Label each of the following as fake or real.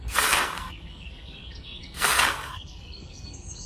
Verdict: fake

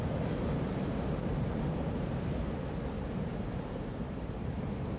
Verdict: fake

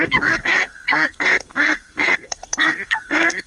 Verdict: fake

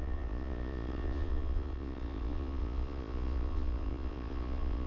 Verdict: fake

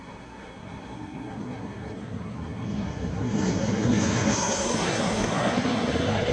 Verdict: fake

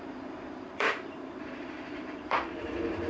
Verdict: fake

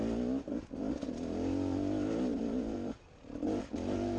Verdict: real